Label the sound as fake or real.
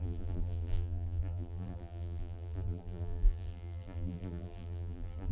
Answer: fake